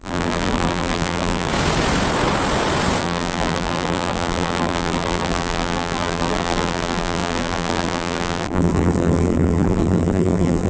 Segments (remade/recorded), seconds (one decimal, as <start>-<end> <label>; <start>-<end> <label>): 0.0-1.5 remade; 1.5-3.0 recorded; 3.0-10.7 remade